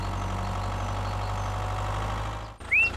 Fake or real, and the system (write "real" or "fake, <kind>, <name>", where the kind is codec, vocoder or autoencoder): real